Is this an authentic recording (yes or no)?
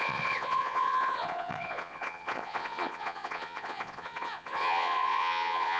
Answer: no